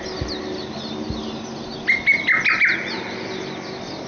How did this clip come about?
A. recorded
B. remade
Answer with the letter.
A